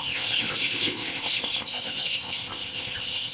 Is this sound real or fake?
fake